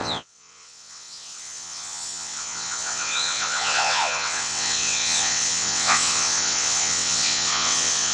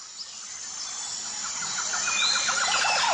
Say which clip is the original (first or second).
second